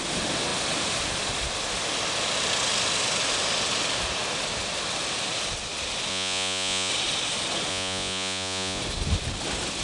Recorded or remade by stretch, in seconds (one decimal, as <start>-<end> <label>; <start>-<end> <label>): 0.0-6.1 recorded; 6.1-6.9 remade; 6.9-7.7 recorded; 7.7-8.8 remade; 8.8-9.8 recorded